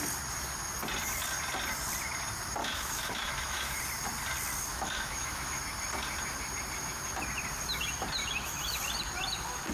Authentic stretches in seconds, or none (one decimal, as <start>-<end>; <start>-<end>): 0.0-2.6; 3.8-4.7; 5.6-8.2; 8.8-9.7